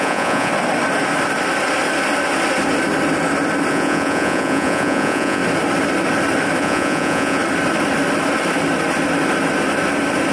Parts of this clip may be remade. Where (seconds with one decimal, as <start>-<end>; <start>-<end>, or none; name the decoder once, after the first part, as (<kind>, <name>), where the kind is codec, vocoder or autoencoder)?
0.0-0.5 (vocoder, Vocos); 3.7-5.4; 6.6-7.4